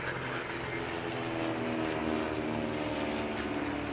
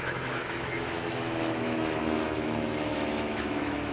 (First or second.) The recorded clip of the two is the first